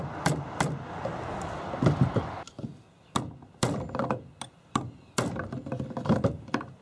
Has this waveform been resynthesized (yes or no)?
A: no